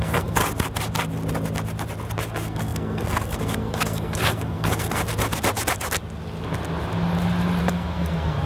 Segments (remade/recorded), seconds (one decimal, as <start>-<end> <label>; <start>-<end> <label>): 0.0-0.4 remade; 0.4-2.3 recorded; 2.3-5.0 remade; 5.0-7.6 recorded; 7.6-8.5 remade